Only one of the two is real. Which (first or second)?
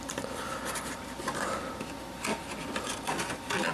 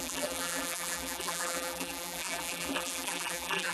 first